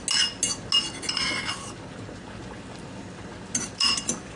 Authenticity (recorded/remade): recorded